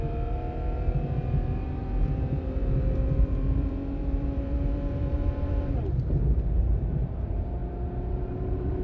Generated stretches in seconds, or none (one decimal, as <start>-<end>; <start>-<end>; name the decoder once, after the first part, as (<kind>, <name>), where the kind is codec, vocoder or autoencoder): 0.0-7.6 (vocoder, BigVGAN v2); 8.2-8.8